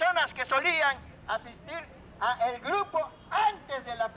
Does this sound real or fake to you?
real